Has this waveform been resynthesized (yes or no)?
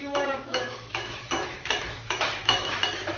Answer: yes